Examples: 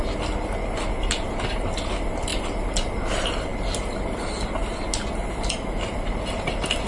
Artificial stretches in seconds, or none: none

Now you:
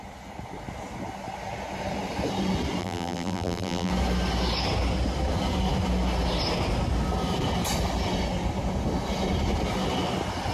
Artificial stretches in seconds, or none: 2.8-3.9

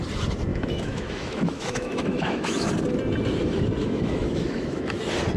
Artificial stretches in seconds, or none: 0.5-2.7; 3.8-5.0

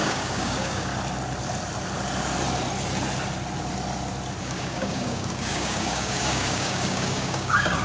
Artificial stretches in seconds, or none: 0.0-0.9; 4.4-7.8

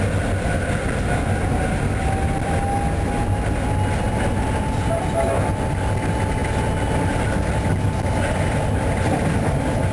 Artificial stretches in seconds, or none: none

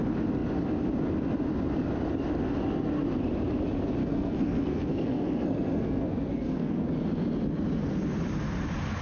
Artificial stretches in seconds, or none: 4.0-6.9

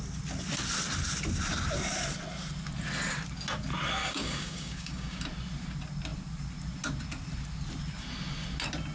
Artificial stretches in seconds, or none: 4.0-5.2